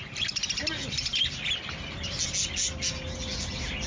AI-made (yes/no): no